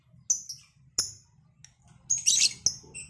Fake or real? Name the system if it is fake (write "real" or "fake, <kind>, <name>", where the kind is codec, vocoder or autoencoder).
real